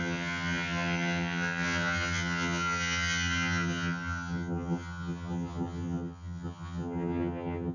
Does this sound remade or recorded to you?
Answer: remade